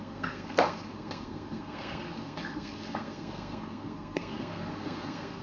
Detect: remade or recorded remade